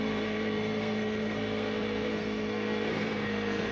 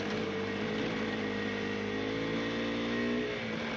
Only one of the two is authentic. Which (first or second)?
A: second